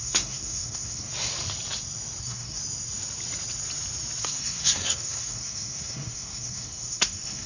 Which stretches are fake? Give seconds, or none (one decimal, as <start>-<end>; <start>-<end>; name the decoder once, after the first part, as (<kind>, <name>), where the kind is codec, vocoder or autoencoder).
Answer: 0.0-1.1 (codec, SNAC); 2.2-2.6; 4.2-7.5